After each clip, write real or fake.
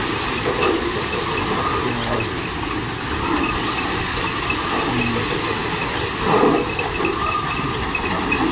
real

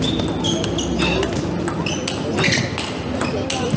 real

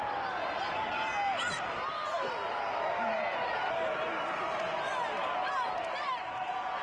real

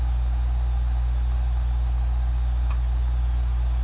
real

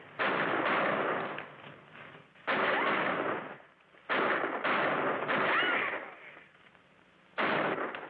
real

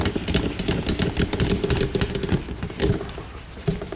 real